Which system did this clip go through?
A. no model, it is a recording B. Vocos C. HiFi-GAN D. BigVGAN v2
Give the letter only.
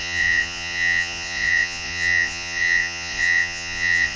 B